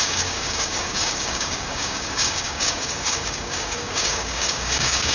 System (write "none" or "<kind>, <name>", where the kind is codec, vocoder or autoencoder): codec, DAC